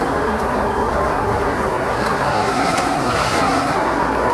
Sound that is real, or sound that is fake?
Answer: fake